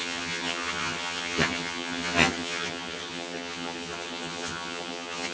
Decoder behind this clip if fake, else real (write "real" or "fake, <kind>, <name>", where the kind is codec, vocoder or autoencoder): fake, vocoder, HiFi-GAN